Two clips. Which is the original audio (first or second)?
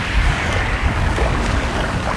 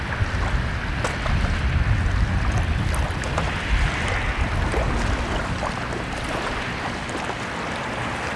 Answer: second